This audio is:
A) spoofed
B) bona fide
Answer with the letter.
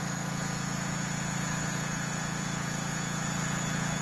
A